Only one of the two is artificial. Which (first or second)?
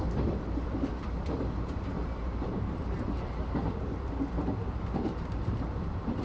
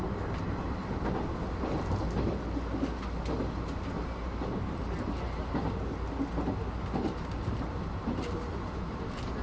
first